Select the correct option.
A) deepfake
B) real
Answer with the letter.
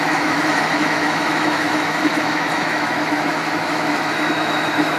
A